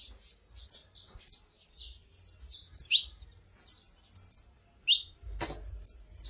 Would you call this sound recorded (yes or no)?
yes